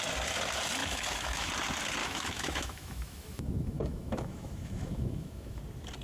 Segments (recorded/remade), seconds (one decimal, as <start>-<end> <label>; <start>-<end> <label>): 0.0-0.8 recorded; 0.8-1.5 remade; 1.5-2.0 recorded; 2.0-5.6 remade; 5.6-6.0 recorded